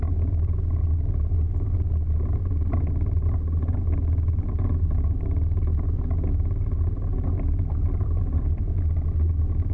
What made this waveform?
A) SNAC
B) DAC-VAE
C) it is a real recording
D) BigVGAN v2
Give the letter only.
C